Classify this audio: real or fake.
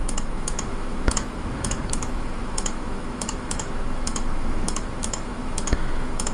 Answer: fake